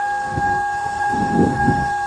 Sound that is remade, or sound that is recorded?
remade